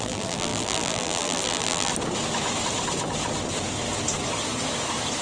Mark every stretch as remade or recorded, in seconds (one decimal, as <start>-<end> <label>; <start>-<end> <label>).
0.0-1.9 remade; 1.9-5.2 recorded